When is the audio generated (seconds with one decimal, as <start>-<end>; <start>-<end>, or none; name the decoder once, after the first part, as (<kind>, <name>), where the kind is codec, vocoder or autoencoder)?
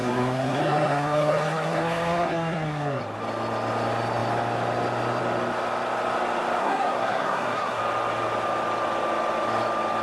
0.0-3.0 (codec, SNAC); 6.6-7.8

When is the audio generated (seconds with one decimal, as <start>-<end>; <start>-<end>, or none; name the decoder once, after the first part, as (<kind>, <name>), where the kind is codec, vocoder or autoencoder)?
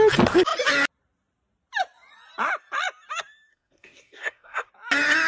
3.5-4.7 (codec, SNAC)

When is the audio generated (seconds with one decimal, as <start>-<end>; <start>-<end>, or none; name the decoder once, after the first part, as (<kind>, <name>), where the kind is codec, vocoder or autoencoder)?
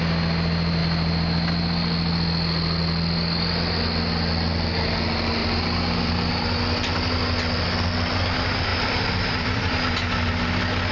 5.4-6.3 (vocoder, BigVGAN v2); 8.7-9.9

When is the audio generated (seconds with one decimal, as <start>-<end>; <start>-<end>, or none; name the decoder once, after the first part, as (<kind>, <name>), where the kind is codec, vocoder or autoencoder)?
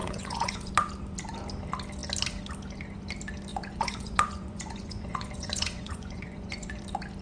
0.0-0.7 (vocoder, Vocos); 3.5-6.8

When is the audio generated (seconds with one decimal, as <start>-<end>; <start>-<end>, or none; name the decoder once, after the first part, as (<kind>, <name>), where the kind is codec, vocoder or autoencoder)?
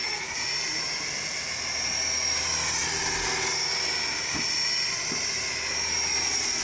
none